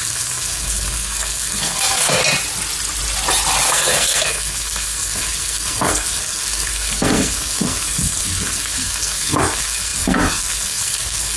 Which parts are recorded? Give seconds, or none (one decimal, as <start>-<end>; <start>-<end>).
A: 2.2-3.7